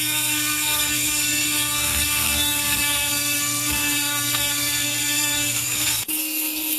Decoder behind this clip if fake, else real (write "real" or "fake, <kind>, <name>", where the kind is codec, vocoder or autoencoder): fake, codec, SNAC